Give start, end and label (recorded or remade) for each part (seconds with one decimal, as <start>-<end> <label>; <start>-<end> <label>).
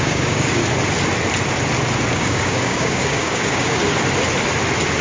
0.0-0.6 remade; 0.6-2.1 recorded; 2.1-3.8 remade; 3.8-5.0 recorded